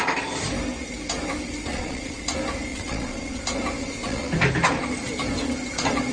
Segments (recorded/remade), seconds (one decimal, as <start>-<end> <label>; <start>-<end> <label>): 0.0-1.7 recorded; 1.7-2.2 remade; 2.2-2.7 recorded; 2.7-3.4 remade; 3.4-3.8 recorded; 3.8-4.3 remade; 4.3-6.1 recorded